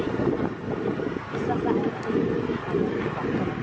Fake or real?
real